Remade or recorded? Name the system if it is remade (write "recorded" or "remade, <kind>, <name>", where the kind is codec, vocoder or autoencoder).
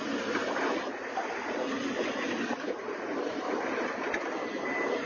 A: recorded